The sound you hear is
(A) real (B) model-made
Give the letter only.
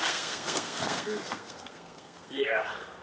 B